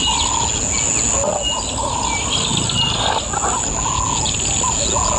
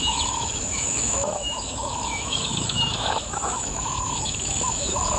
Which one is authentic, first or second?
first